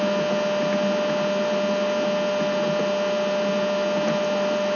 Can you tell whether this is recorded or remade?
recorded